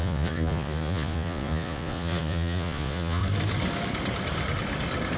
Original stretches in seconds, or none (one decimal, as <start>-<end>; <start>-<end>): 3.2-5.2